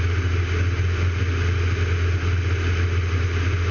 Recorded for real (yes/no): yes